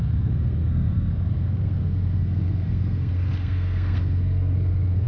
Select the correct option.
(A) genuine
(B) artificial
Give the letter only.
B